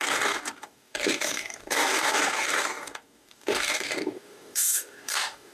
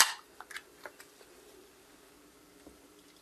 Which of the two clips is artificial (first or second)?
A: first